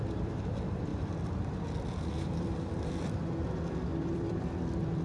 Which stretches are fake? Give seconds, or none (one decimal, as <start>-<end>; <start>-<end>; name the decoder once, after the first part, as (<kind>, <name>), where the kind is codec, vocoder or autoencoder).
0.9-3.1 (vocoder, BigVGAN v2); 3.9-5.0